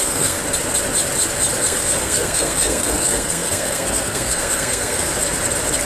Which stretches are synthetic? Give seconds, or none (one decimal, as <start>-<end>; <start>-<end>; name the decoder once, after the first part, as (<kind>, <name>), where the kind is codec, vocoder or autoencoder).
0.0-0.4 (codec, SNAC); 1.6-5.1